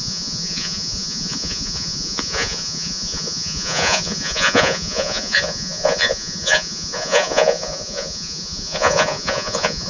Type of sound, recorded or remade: remade